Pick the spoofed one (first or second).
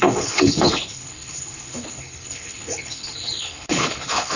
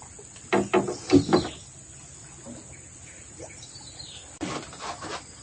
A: first